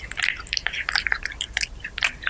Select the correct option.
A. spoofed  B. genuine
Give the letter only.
B